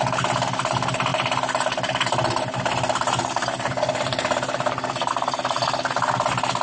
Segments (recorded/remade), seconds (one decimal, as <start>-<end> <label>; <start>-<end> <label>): 0.0-6.6 recorded